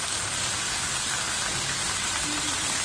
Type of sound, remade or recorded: recorded